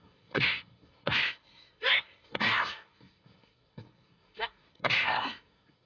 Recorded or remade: remade